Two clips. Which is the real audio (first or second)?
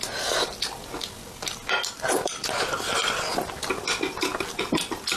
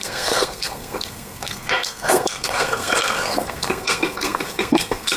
first